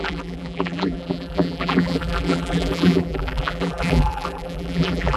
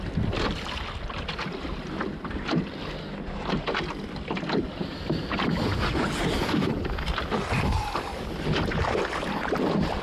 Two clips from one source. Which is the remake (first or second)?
first